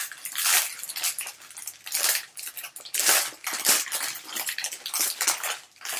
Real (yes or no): yes